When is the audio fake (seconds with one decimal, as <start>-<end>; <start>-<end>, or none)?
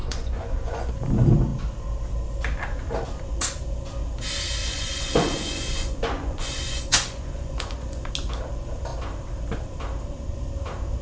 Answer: 0.0-0.9; 4.6-8.1